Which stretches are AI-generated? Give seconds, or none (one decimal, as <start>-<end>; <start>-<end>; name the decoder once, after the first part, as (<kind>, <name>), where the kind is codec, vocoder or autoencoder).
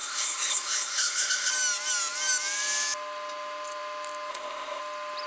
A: 0.0-1.5 (codec, ZipCodec); 4.3-4.8